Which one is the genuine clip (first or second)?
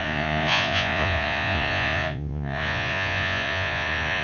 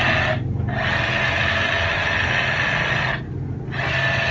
second